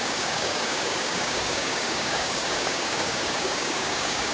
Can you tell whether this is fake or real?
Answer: fake